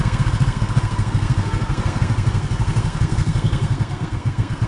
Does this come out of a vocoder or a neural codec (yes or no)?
yes